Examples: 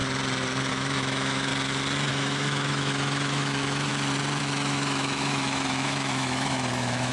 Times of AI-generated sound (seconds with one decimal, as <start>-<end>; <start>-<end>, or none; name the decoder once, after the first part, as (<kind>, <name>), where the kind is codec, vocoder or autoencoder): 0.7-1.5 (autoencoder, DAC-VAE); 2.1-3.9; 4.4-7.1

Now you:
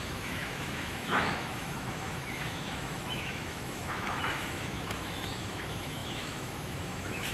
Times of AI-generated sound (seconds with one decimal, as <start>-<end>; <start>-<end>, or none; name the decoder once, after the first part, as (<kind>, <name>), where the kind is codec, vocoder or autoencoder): 0.0-7.3 (autoencoder, DAC-VAE)

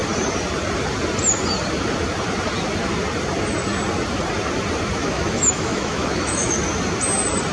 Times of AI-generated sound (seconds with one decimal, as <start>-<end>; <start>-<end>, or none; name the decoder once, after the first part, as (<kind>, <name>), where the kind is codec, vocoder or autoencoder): 5.0-6.5 (autoencoder, DAC-VAE)

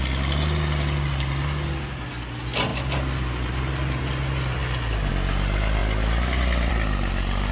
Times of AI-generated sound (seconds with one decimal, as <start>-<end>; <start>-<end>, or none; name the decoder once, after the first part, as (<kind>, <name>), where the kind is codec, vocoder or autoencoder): none

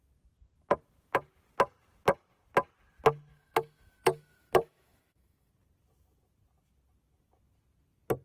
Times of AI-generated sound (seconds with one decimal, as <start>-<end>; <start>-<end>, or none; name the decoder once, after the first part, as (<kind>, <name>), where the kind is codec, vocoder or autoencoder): 3.3-5.5 (autoencoder, DAC-VAE)

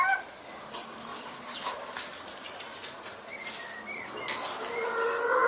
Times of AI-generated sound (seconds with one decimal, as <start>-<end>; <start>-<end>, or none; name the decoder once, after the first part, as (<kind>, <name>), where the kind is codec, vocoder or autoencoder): none